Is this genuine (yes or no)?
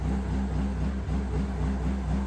yes